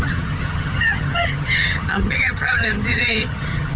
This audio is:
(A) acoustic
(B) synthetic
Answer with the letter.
B